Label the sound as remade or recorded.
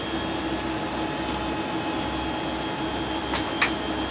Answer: recorded